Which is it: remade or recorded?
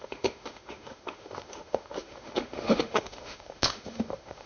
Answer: remade